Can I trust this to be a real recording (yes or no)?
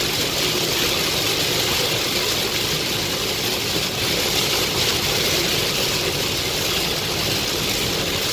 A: yes